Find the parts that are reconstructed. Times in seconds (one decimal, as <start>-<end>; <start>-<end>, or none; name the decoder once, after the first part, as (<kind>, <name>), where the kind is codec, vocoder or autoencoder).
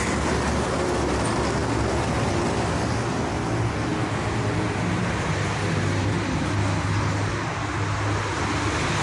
none